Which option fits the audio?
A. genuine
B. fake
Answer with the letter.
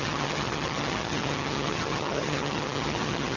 B